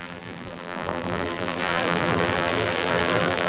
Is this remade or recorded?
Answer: remade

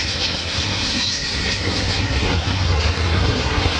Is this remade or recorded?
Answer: remade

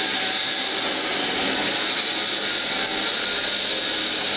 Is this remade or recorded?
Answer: recorded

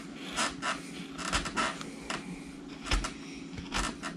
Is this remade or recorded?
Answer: recorded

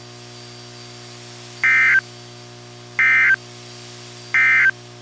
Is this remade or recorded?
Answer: recorded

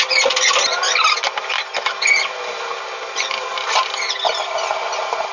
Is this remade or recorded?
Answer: recorded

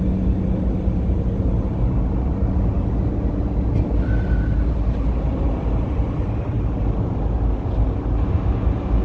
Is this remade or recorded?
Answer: recorded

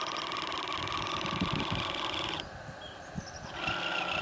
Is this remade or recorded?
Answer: recorded